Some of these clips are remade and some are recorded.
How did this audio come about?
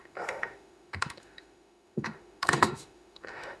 remade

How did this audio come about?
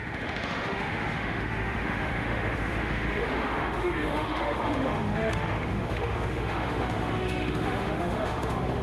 remade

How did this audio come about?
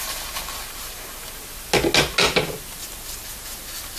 recorded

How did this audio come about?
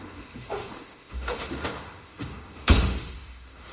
remade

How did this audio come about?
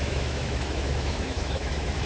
remade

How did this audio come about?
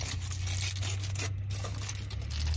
recorded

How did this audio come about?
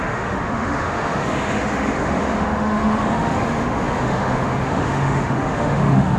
remade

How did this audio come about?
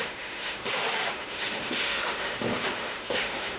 remade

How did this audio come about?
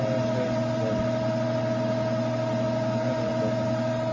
recorded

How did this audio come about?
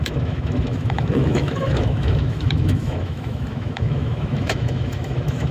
remade